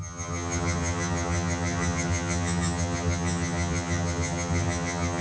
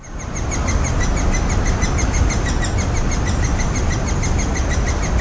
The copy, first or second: first